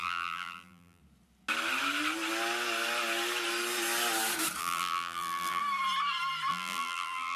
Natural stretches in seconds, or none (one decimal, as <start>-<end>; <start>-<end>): 1.0-4.6; 5.6-6.5